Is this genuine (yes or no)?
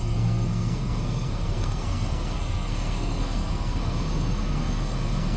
no